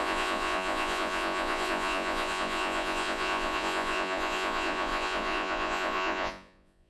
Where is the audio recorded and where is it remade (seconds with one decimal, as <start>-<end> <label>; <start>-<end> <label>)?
0.0-6.9 remade